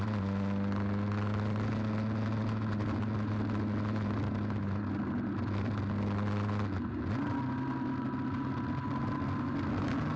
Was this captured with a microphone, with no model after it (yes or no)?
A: yes